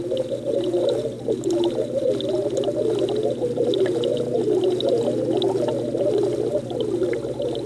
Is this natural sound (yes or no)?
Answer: yes